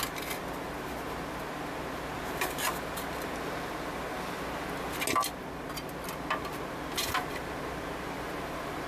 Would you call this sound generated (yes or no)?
no